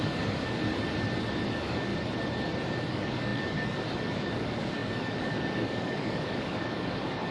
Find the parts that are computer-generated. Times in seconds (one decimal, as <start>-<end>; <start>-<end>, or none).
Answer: 0.0-0.6; 1.5-1.9; 2.9-7.3